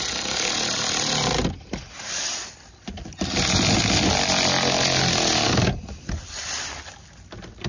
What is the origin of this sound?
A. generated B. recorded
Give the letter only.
B